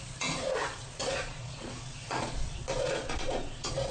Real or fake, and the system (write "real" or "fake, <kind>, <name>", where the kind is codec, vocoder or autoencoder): fake, vocoder, Vocos